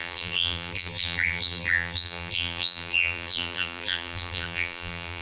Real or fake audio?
fake